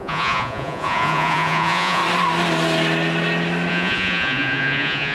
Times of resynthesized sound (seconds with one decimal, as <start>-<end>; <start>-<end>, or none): 0.0-2.0; 3.7-5.1